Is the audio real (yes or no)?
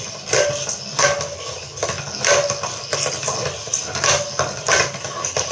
yes